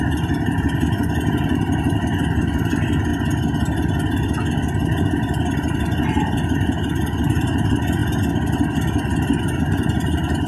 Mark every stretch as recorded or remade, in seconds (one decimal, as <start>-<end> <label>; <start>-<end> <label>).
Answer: 0.0-3.1 remade; 3.1-5.0 recorded; 5.0-8.0 remade; 8.0-9.4 recorded; 9.4-10.5 remade